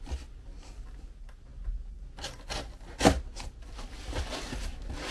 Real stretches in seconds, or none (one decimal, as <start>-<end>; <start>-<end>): 0.0-5.1